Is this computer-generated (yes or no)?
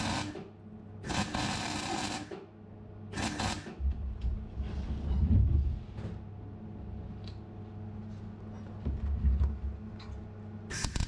no